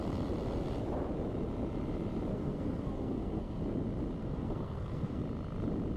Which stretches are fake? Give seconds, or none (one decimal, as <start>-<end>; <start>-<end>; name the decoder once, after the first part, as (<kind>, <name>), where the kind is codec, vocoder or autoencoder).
2.3-3.6 (codec, SNAC); 4.2-5.2